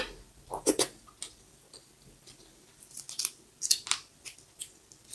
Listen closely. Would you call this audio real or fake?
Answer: real